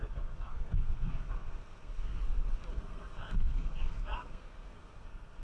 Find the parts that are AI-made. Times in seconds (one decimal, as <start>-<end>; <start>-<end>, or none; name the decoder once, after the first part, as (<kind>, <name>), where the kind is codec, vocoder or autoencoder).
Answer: 0.0-2.2 (codec, SNAC); 2.7-5.4

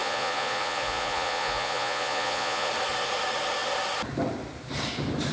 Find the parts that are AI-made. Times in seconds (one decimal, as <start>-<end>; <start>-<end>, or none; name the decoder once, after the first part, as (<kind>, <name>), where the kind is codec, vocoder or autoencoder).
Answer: 0.0-2.7 (vocoder, Vocos)